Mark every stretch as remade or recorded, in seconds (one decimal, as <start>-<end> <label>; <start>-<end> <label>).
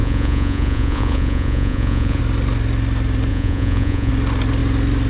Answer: 0.0-2.2 remade; 2.2-3.3 recorded; 3.3-4.1 remade; 4.1-5.1 recorded